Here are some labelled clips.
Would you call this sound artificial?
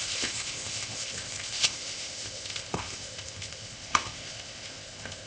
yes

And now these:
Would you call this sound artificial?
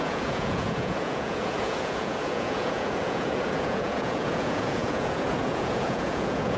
yes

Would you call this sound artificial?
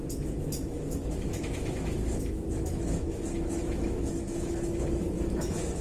yes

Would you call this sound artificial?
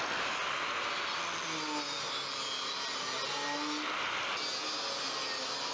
no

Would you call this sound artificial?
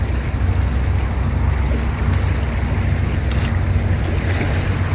no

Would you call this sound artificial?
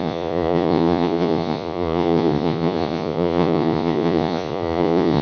yes